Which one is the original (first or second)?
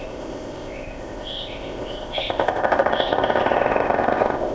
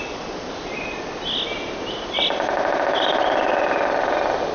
second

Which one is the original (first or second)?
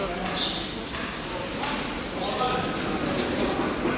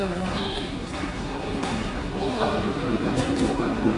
first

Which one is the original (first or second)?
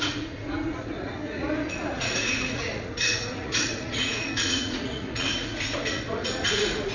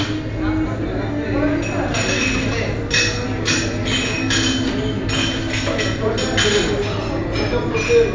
second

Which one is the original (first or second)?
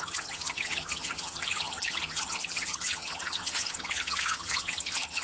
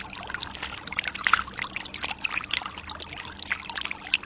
second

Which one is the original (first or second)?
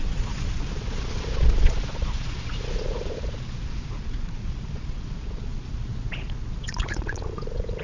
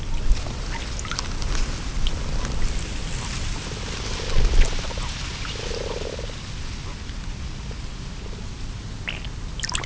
second